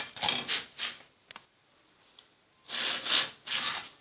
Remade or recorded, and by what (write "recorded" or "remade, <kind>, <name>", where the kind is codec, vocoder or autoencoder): recorded